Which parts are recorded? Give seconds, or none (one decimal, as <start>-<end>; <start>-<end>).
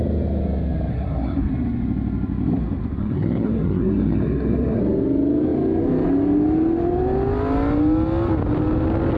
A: 0.0-0.9; 1.5-3.0; 4.8-9.2